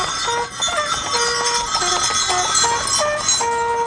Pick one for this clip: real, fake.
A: real